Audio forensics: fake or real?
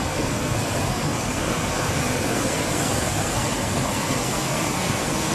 fake